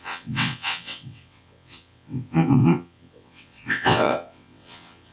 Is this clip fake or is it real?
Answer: fake